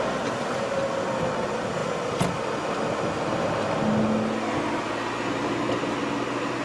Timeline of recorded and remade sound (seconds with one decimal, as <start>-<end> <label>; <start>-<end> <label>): 0.0-6.6 recorded